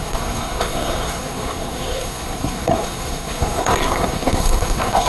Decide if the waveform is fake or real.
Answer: fake